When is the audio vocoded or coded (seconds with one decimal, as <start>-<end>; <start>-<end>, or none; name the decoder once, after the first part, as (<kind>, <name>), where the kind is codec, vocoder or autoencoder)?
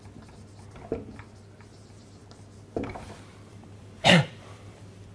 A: 3.5-5.1 (vocoder, BigVGAN v2)